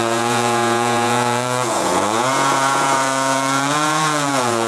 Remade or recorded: remade